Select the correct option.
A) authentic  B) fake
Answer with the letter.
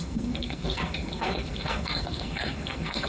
B